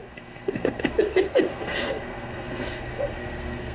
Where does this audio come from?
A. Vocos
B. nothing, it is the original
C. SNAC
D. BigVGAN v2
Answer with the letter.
C